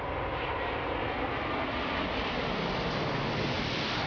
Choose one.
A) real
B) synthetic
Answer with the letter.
A